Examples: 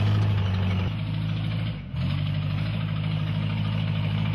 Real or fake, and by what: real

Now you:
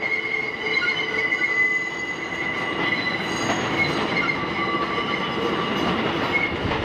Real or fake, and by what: real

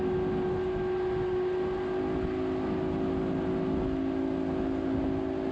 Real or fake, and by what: real